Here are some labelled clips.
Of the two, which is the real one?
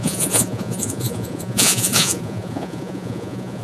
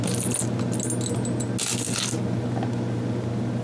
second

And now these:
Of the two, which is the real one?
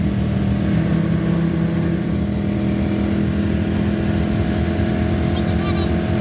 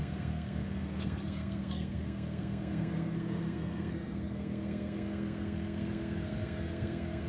first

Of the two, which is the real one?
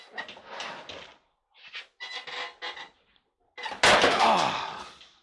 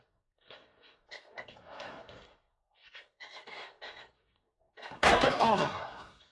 first